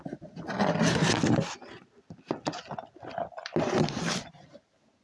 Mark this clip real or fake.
real